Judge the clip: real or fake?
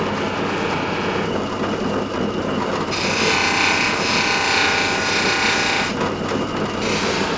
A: real